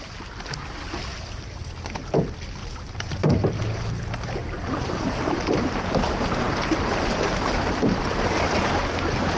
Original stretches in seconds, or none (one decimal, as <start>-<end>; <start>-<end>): 0.0-1.1; 1.6-2.6; 3.9-4.4; 8.8-9.4